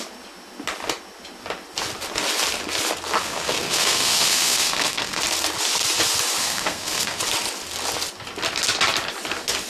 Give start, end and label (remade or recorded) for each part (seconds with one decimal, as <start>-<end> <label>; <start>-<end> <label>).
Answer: 0.0-3.2 recorded; 3.2-5.2 remade; 5.2-6.4 recorded; 6.4-7.2 remade; 7.2-9.7 recorded